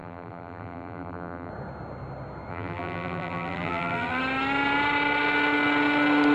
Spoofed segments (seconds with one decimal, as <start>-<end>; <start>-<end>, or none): 0.0-1.5; 2.5-4.2